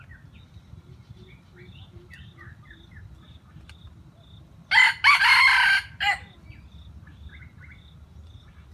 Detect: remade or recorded recorded